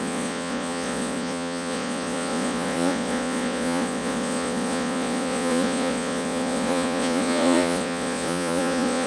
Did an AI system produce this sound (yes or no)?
yes